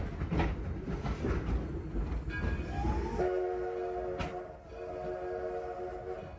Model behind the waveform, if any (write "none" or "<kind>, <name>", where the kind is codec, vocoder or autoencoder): none